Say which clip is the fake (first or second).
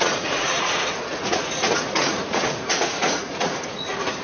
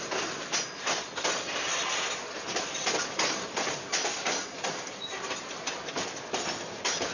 first